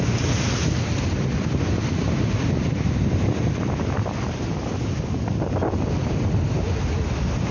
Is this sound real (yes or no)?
yes